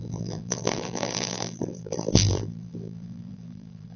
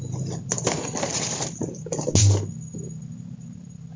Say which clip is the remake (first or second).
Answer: first